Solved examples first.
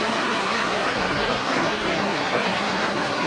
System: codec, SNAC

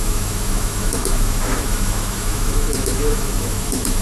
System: autoencoder, DAC-VAE